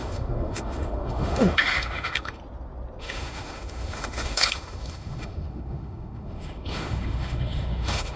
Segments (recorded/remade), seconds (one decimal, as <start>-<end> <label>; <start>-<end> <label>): 0.0-2.4 remade; 2.4-3.0 recorded; 3.0-8.2 remade